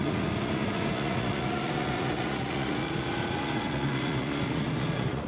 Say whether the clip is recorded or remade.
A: remade